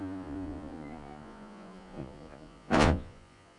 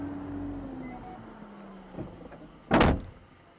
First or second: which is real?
second